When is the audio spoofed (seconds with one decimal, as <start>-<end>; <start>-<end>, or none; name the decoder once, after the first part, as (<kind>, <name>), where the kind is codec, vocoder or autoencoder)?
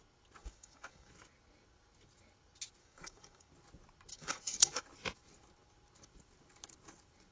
0.4-1.1 (codec, DAC); 2.8-3.5; 4.1-4.8